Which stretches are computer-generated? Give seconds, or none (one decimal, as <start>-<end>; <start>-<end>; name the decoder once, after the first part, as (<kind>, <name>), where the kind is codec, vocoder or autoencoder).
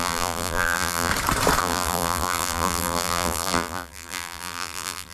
0.0-1.1 (vocoder, BigVGAN v2); 1.6-5.1